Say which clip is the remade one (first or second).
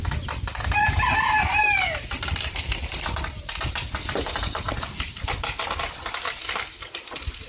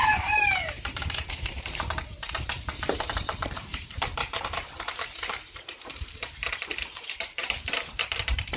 second